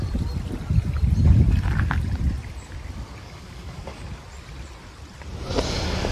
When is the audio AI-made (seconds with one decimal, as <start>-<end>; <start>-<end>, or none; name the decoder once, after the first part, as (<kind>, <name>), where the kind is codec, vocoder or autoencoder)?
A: 3.2-4.0 (codec, DAC)